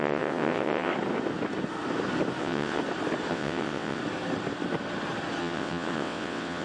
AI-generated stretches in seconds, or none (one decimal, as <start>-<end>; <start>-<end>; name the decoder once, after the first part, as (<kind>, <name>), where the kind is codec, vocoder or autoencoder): 0.0-0.9 (vocoder, WaveNeXt); 2.4-2.8; 3.3-4.0; 5.4-6.6